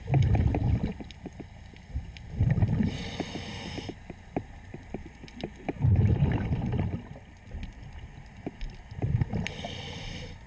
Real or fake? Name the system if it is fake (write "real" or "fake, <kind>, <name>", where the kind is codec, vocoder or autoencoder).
real